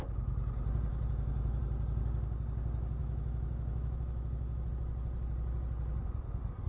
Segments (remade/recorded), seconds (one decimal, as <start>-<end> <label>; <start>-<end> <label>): 0.0-0.9 recorded; 0.9-1.6 remade; 1.6-3.0 recorded; 3.0-4.7 remade; 4.7-6.7 recorded